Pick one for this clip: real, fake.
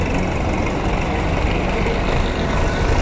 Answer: real